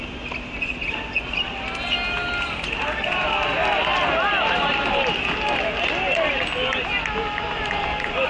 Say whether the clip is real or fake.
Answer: real